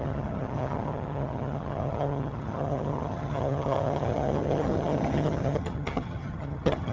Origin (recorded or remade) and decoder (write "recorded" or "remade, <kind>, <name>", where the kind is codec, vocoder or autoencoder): remade, vocoder, HiFi-GAN